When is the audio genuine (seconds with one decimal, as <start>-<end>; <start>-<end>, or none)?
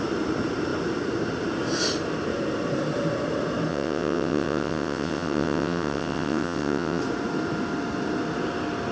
0.0-3.7; 7.0-8.9